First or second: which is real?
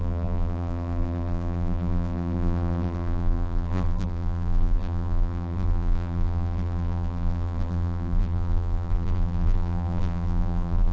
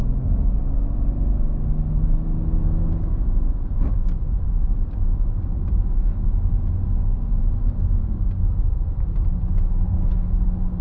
second